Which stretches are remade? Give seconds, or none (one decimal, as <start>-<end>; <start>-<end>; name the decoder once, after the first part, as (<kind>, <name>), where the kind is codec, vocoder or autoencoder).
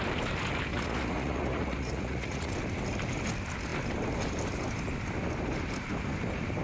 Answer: 0.7-2.5 (vocoder, Vocos)